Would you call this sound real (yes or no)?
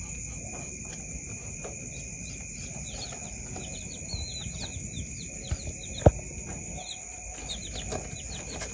yes